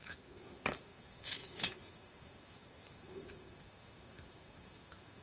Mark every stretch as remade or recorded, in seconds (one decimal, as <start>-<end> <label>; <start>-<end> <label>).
0.0-5.2 remade